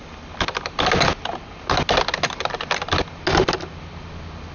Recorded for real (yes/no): yes